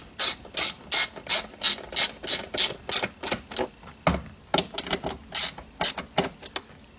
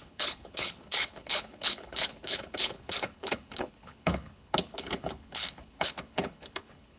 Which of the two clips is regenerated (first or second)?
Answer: second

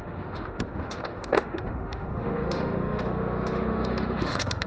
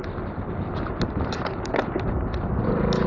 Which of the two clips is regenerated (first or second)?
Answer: first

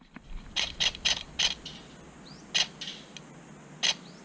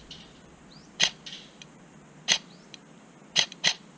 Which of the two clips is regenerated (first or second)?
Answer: second